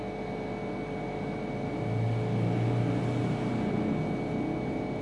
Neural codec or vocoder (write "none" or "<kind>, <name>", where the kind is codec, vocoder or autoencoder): none